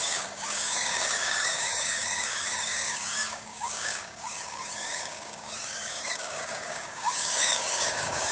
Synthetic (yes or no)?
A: yes